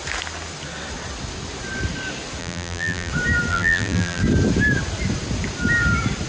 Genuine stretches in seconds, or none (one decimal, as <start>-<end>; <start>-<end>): 0.0-2.4; 3.1-3.5; 4.2-6.3